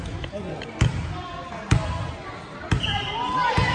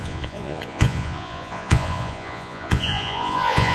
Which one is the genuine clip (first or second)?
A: first